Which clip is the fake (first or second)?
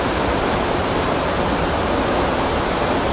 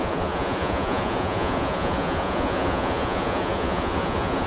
second